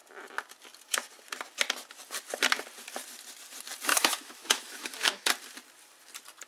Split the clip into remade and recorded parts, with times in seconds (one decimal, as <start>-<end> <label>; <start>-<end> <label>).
0.0-3.9 recorded; 3.9-5.3 remade; 5.3-6.5 recorded